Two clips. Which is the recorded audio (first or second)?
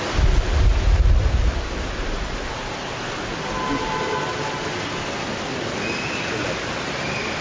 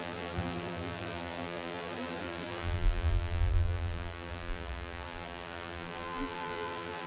first